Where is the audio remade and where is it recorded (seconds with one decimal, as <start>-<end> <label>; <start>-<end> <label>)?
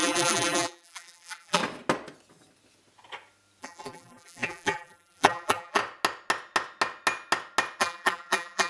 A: 0.0-1.6 remade; 1.6-3.6 recorded; 3.6-5.8 remade; 5.8-7.8 recorded; 7.8-8.7 remade